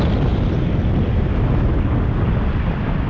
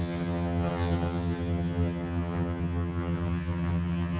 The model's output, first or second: second